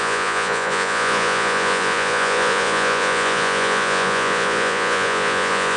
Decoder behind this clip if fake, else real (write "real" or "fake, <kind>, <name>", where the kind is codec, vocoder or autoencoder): fake, vocoder, Vocos